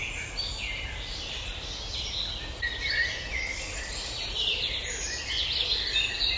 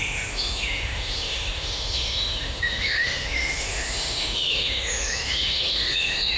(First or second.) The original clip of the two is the first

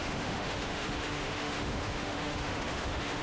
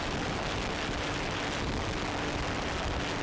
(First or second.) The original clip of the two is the second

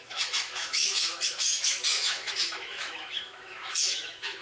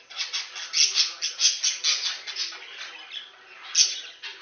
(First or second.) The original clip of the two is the second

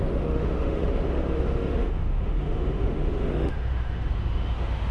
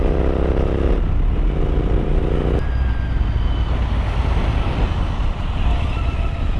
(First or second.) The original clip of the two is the second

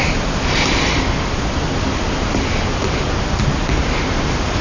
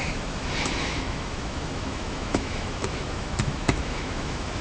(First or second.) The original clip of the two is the first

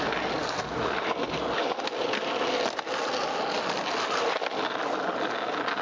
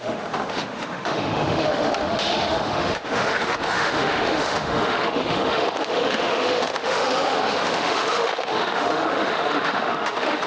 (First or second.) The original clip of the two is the first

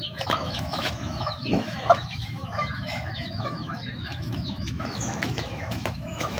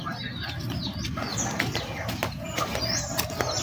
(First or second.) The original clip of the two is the second